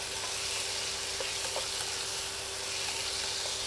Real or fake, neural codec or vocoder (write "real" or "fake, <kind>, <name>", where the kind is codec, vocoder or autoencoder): real